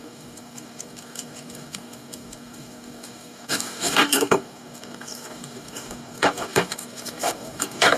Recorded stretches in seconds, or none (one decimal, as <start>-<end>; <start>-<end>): none